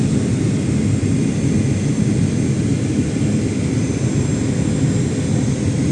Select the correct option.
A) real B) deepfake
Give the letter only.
A